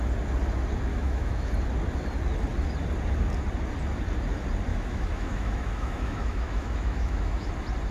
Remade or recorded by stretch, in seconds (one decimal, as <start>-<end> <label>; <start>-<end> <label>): 0.0-0.9 recorded; 0.9-1.5 remade; 1.5-4.7 recorded; 4.7-7.5 remade; 7.5-7.9 recorded